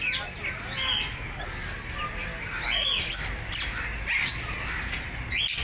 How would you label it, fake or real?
real